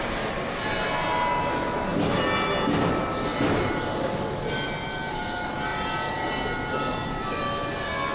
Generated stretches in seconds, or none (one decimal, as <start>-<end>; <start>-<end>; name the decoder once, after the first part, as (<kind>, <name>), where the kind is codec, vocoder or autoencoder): 3.3-4.2 (vocoder, BigVGAN v2); 5.7-7.4

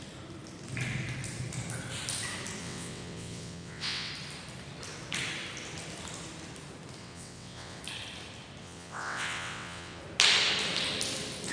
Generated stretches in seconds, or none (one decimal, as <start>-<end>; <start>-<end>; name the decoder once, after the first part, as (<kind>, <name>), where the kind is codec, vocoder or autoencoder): 2.6-4.1 (vocoder, WaveNeXt); 7.0-7.8; 8.6-10.0

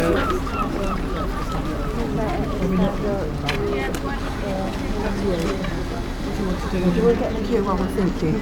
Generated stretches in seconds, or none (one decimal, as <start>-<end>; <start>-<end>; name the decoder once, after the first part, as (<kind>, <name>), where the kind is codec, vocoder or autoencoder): none

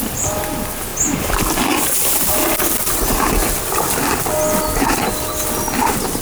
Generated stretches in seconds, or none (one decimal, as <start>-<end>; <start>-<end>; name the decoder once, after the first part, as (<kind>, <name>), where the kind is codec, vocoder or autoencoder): none

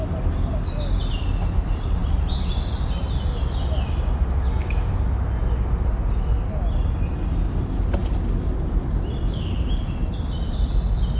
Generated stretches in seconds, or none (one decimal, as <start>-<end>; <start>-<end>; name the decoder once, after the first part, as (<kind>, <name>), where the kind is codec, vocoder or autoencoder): none

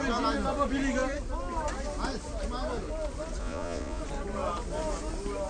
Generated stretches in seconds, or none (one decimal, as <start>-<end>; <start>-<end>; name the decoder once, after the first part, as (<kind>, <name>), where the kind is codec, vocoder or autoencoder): 3.4-4.0 (vocoder, Vocos)

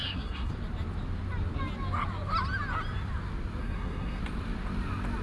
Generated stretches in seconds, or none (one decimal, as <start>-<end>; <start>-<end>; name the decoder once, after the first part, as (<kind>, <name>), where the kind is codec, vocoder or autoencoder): 0.0-0.5 (codec, SNAC); 3.6-4.2

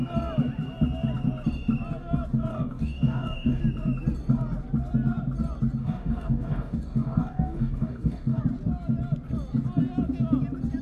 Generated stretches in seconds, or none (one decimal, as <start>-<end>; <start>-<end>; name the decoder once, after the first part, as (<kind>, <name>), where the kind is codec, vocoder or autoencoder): 2.5-3.6 (codec, DAC); 5.8-8.4